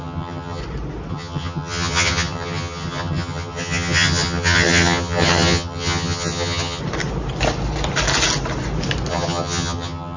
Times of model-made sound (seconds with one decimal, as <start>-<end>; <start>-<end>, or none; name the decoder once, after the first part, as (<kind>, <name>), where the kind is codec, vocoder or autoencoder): 0.0-0.6 (vocoder, HiFi-GAN); 1.1-6.8; 9.1-10.2